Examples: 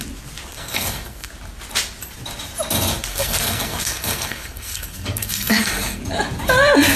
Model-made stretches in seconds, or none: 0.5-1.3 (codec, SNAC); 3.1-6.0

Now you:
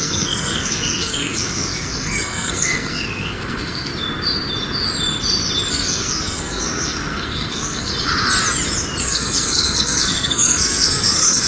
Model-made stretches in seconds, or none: 0.0-3.9 (codec, SNAC); 5.7-7.9; 9.0-11.5

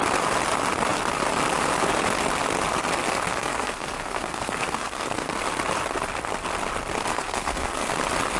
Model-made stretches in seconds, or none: 3.3-5.4 (codec, SNAC); 7.1-7.9

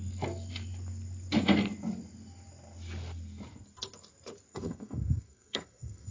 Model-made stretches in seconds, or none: 4.5-6.1 (codec, SNAC)